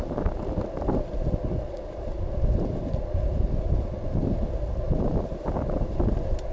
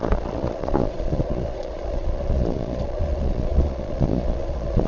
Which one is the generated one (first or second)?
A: second